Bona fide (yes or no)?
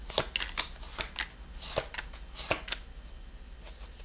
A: yes